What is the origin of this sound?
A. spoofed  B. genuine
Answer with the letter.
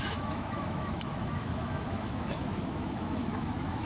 A